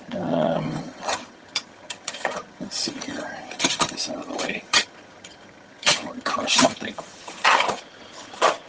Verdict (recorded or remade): remade